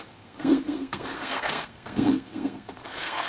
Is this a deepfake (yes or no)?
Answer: yes